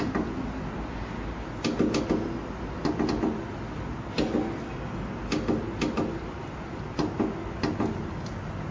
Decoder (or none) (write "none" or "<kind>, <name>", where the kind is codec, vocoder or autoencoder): none